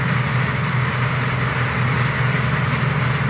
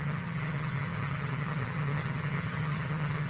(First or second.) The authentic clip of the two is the first